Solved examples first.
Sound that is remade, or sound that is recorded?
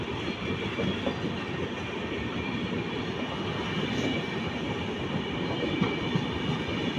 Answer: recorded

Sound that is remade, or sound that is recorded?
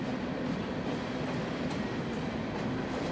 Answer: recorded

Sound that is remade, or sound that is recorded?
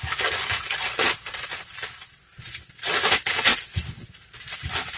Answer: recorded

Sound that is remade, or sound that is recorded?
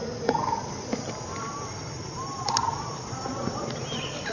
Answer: recorded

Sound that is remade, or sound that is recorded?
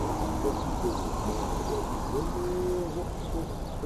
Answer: recorded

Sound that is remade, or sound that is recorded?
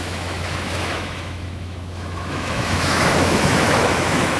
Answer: remade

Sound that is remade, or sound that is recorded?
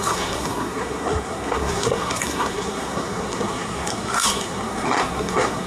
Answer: remade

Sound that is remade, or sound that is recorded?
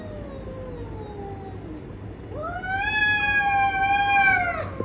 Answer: recorded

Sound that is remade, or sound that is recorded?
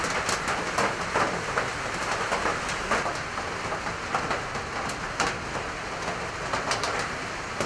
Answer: recorded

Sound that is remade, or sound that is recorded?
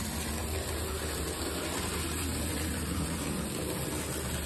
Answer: recorded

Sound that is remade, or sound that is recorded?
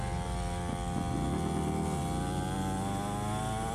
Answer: recorded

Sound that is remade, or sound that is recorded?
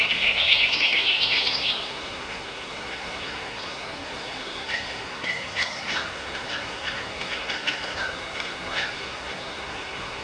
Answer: remade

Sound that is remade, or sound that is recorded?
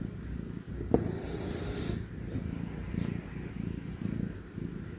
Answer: recorded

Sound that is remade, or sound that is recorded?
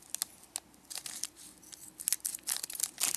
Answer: recorded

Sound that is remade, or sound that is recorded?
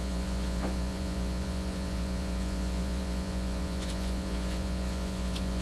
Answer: remade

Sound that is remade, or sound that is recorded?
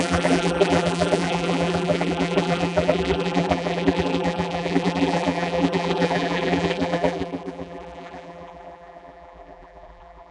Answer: remade